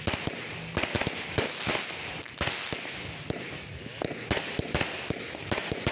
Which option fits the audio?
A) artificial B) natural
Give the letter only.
B